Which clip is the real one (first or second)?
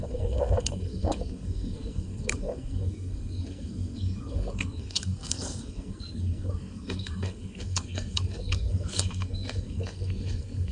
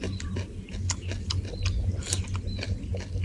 second